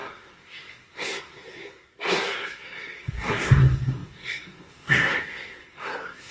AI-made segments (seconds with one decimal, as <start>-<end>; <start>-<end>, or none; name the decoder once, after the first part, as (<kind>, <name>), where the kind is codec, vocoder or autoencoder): 0.0-6.3 (codec, SNAC)